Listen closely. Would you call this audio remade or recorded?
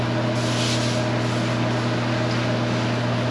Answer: recorded